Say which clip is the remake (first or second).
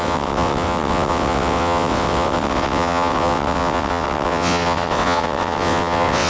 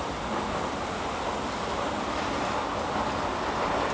first